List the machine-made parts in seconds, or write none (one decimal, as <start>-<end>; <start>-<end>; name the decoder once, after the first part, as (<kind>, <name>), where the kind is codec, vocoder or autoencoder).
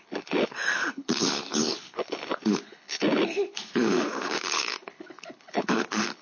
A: 0.0-6.2 (codec, HILCodec)